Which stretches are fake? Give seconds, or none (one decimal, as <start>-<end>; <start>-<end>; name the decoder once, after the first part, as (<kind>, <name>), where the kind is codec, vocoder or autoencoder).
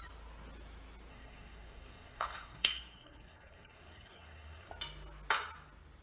1.1-4.7 (codec, SNAC)